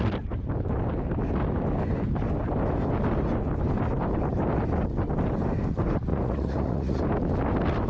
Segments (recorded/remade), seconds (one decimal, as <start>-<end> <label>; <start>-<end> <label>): 0.0-6.1 recorded; 6.1-7.0 remade; 7.0-7.9 recorded